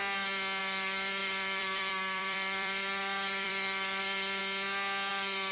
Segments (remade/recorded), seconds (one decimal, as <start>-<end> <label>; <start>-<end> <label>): 0.0-0.6 recorded; 0.6-4.4 remade; 4.4-5.1 recorded; 5.1-5.5 remade